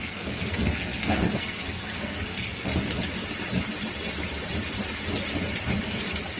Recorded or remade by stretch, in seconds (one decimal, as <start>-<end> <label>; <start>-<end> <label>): 0.0-2.7 remade; 2.7-6.4 recorded